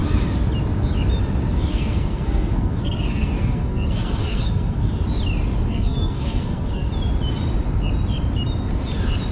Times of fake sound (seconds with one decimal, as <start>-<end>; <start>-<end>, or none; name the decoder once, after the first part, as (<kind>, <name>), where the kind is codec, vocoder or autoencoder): 1.7-4.9 (codec, SNAC); 5.7-6.9